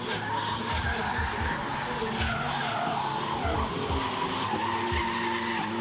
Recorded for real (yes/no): yes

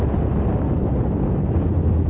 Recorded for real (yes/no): yes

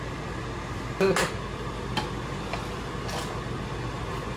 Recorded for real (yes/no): yes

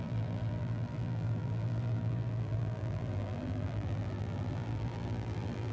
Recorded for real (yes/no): no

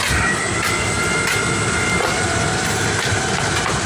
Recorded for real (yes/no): yes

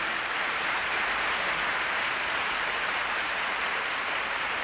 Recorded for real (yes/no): no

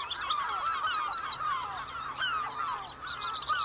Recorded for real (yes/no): yes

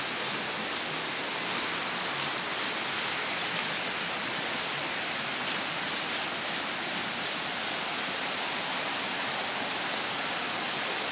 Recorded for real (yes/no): yes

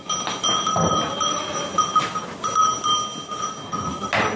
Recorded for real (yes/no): yes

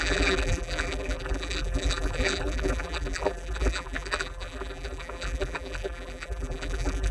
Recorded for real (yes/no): no